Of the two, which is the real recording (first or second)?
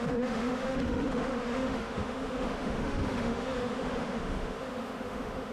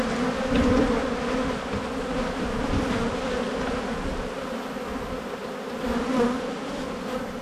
second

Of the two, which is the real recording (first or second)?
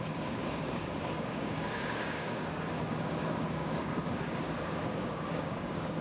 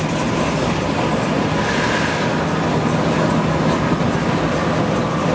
second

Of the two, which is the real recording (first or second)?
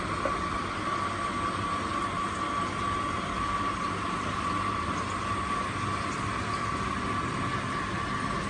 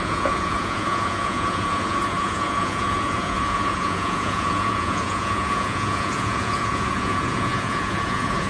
first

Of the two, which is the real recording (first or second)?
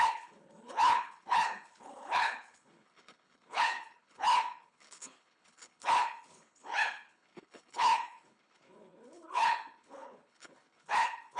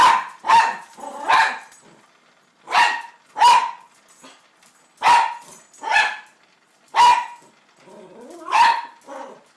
second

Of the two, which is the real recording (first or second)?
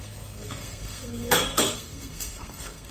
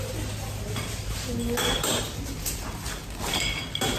second